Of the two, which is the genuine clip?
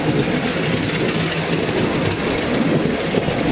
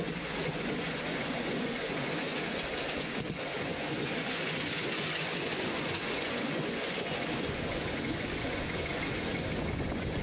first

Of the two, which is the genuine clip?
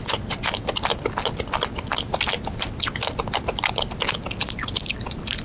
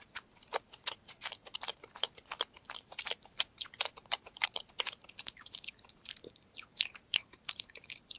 first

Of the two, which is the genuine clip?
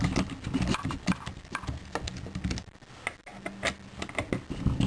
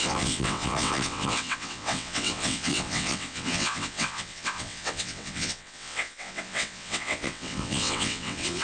first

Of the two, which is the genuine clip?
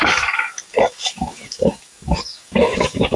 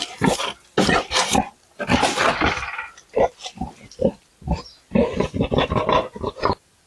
second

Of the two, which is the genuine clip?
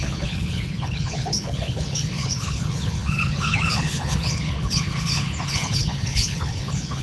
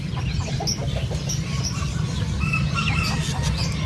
second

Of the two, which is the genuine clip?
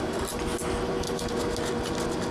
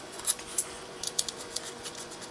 first